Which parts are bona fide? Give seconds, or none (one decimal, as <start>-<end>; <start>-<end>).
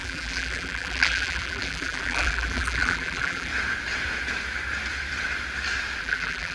3.5-6.0